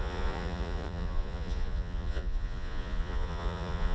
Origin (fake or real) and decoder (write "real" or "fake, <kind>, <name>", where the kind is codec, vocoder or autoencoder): fake, vocoder, Vocos